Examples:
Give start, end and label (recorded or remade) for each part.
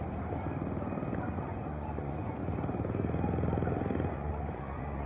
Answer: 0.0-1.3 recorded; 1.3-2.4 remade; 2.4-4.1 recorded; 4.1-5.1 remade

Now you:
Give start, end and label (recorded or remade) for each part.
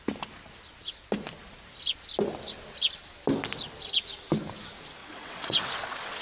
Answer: 0.0-5.0 recorded; 5.0-5.7 remade; 5.7-6.2 recorded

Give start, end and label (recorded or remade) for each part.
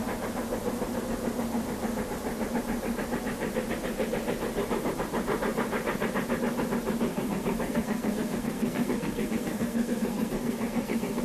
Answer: 0.0-7.1 recorded; 7.1-11.2 remade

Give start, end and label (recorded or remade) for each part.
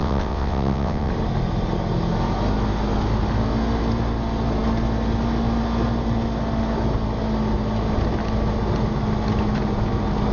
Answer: 0.0-1.1 remade; 1.1-10.3 recorded